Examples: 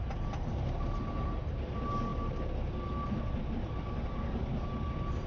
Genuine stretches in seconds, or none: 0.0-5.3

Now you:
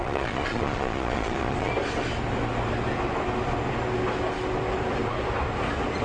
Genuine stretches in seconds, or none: 1.7-6.0